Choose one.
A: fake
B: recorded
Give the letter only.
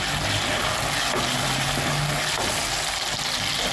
B